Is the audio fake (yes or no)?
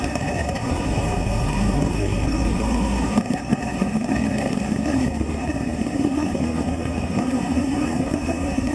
yes